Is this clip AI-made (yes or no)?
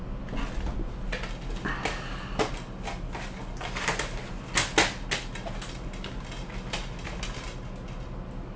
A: no